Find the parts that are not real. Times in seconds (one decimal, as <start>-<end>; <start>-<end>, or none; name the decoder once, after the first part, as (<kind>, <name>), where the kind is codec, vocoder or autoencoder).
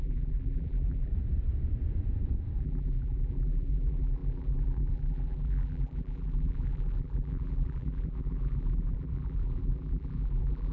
0.0-1.1 (vocoder, BigVGAN v2); 2.6-10.7